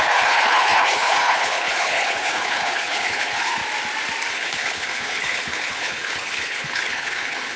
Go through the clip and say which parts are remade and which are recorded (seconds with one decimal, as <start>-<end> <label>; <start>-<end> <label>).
0.0-3.6 remade; 3.6-4.3 recorded; 4.3-7.6 remade